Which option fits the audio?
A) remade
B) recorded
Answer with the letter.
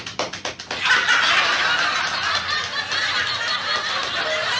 B